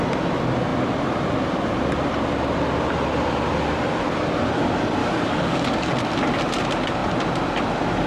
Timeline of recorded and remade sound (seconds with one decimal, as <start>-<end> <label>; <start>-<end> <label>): 0.0-5.0 recorded; 5.0-5.9 remade; 5.9-8.1 recorded